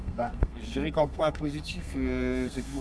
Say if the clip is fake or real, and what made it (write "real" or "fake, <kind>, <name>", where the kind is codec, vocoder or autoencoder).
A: fake, codec, SNAC